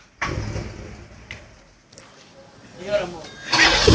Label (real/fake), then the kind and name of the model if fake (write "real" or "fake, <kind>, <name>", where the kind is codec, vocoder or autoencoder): real